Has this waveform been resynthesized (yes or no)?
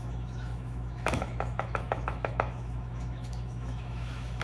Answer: yes